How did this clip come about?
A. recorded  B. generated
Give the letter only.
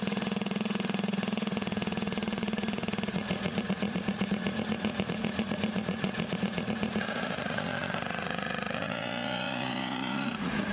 B